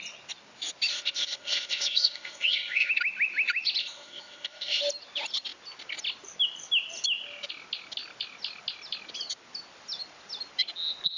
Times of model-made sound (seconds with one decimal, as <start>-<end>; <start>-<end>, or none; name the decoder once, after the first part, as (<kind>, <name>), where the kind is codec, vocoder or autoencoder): 0.9-2.9 (codec, ZipCodec); 3.8-4.8